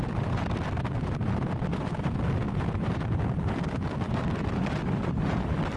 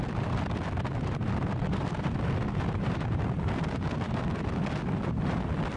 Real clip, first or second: second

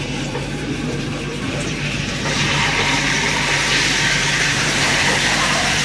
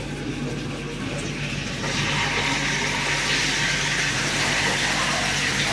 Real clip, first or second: second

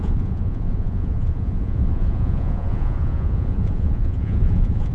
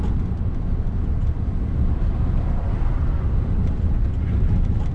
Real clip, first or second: second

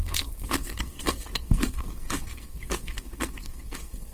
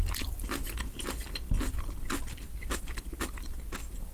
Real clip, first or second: second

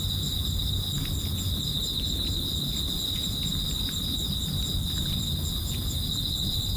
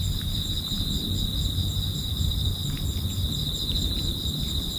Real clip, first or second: first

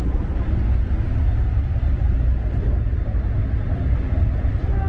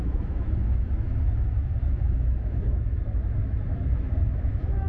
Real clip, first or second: first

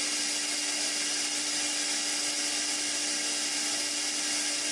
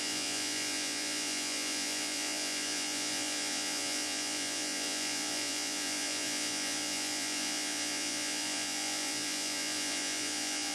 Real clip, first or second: first